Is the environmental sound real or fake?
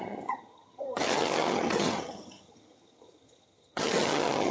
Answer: fake